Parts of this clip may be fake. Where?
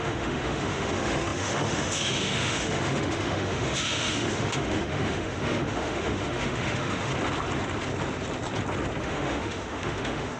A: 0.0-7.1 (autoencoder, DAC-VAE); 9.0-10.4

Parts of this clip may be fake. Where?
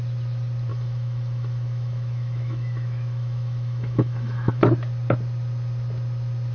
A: 0.7-4.6 (autoencoder, DAC-VAE)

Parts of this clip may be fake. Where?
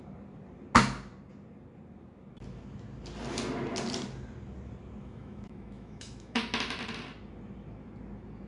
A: 5.0-6.4 (autoencoder, DAC-VAE)